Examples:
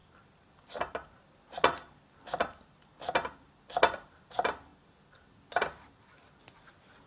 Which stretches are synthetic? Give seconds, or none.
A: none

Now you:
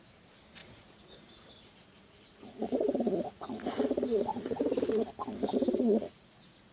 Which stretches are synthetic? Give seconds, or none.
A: 0.6-4.6 (vocoder, Vocos); 5.6-6.7

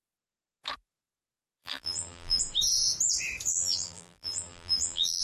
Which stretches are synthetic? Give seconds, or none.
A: 1.6-2.4 (vocoder, BigVGAN v2); 3.5-5.2